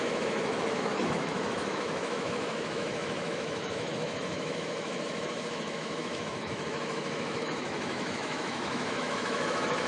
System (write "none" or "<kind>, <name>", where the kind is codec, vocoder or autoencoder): autoencoder, DAC-VAE